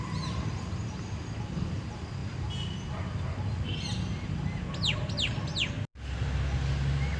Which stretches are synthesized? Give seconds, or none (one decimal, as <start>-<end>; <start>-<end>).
none